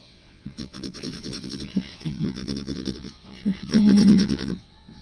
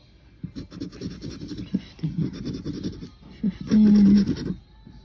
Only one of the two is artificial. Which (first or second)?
first